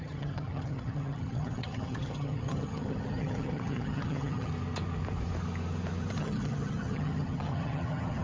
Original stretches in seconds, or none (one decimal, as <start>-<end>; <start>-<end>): 4.5-6.1